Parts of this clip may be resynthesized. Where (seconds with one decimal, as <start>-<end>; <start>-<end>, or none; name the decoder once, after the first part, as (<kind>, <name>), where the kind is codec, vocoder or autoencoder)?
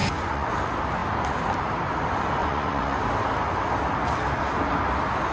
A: 0.0-0.5 (vocoder, Vocos); 2.4-3.0